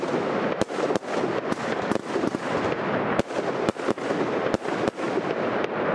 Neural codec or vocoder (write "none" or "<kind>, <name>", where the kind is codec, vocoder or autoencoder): none